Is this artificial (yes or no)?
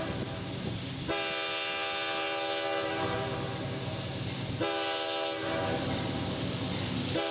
no